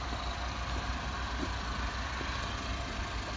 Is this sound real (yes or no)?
yes